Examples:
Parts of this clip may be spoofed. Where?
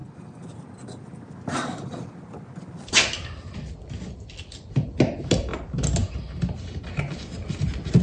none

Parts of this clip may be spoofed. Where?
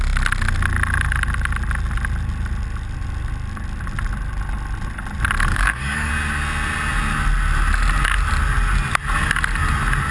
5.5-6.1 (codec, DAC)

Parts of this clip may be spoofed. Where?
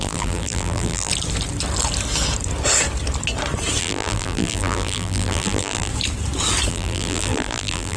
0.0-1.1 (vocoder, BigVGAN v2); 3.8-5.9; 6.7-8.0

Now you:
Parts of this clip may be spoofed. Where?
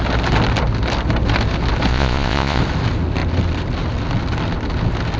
1.9-2.6 (vocoder, Vocos)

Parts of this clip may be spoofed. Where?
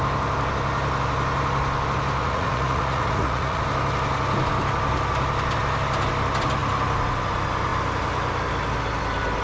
2.2-3.6 (vocoder, Vocos)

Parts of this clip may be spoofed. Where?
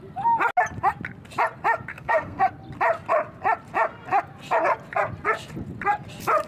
1.9-2.4 (codec, SNAC)